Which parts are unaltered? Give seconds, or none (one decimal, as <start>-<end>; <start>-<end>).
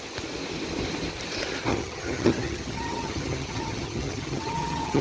0.0-1.7